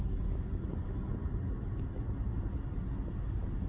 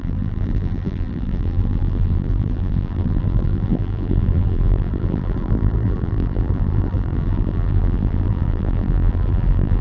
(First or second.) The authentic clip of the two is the first